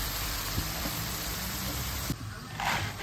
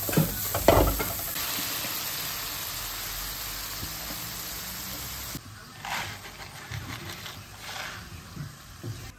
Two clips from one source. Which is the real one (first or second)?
second